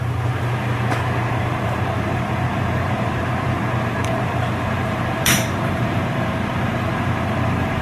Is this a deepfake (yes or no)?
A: yes